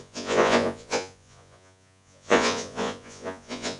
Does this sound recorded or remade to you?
remade